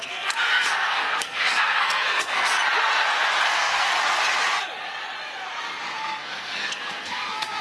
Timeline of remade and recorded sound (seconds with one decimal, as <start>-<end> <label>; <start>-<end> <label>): 0.0-2.6 remade; 2.6-3.4 recorded; 3.4-3.9 remade; 3.9-5.8 recorded; 5.8-7.6 remade